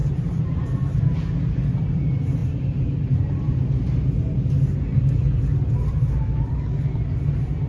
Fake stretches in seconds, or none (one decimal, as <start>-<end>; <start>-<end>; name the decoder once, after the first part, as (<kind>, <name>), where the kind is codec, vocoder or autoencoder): 0.0-0.6 (vocoder, BigVGAN v2)